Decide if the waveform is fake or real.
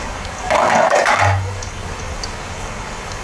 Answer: fake